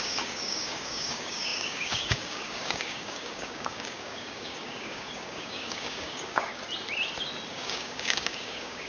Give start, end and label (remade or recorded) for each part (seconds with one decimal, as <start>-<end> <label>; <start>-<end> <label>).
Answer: 0.0-6.5 remade; 6.5-7.5 recorded; 7.5-8.9 remade